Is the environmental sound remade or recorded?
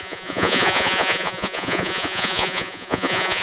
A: remade